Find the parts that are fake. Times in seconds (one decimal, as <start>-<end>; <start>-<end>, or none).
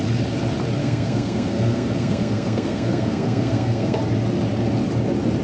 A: 0.8-4.0